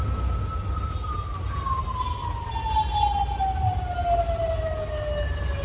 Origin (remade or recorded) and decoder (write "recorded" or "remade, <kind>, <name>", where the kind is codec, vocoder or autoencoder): recorded